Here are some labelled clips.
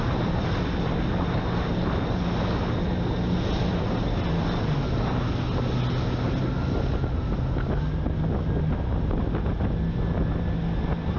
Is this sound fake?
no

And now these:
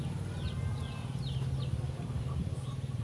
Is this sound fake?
no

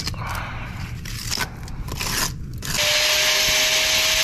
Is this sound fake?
no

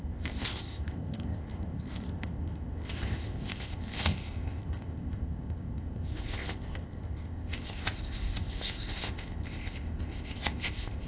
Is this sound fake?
yes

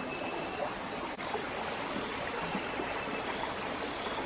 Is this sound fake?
no